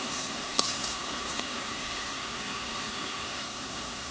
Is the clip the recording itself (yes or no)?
no